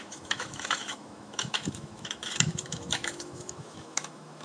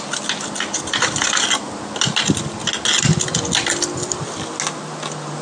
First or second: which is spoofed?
first